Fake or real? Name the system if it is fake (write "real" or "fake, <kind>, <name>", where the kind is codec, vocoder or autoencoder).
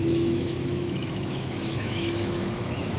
fake, autoencoder, DAC-VAE